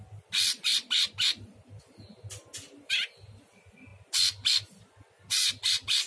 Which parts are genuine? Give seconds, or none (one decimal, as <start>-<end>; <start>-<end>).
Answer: 0.0-6.1